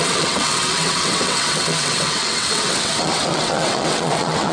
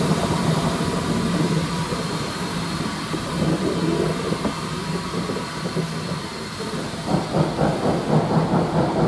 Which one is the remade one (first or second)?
first